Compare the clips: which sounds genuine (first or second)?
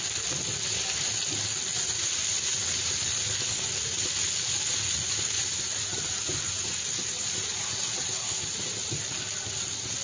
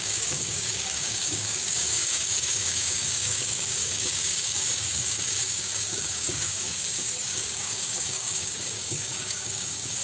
first